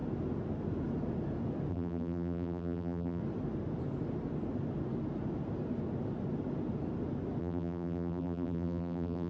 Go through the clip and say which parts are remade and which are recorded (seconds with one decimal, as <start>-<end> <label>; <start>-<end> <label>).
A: 0.0-1.7 recorded; 1.7-3.2 remade; 3.2-7.4 recorded; 7.4-9.3 remade